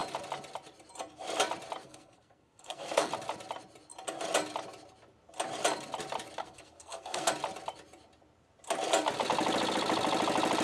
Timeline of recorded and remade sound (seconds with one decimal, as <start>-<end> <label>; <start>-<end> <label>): 0.0-1.8 recorded; 1.8-3.1 remade; 3.1-6.4 recorded; 6.4-7.3 remade; 7.3-10.6 recorded